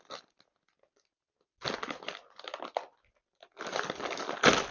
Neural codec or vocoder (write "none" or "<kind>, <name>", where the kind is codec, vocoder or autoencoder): none